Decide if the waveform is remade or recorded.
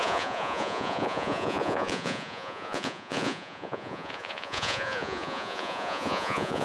remade